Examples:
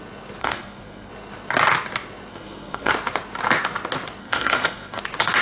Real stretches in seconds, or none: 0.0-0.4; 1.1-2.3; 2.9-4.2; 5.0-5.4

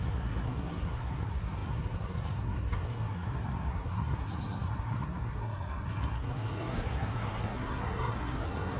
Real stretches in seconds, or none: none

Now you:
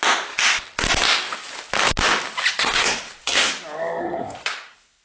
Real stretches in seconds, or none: 0.0-2.6; 3.5-4.0

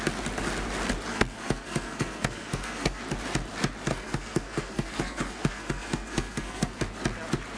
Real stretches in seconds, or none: 0.0-1.1; 3.0-3.9; 6.8-7.6

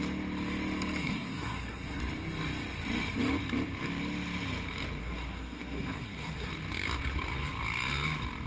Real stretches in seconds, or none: 0.0-1.0; 2.0-5.0; 6.5-8.5

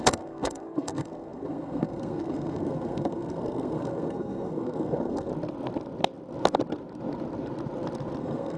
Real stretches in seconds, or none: 5.3-8.2

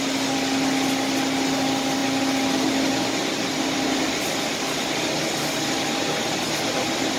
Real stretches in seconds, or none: 0.0-7.2